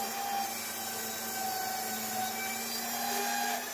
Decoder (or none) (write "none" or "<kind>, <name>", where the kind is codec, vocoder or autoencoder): none